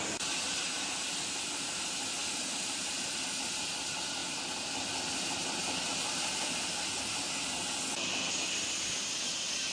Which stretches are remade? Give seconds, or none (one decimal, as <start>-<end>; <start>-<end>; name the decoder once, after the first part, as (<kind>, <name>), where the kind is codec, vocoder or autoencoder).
none